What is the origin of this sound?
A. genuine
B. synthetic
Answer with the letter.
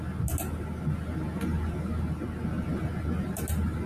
A